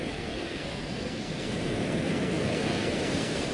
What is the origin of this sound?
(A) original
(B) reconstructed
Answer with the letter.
B